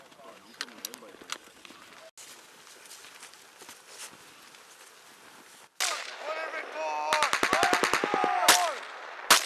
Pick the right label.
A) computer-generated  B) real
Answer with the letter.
B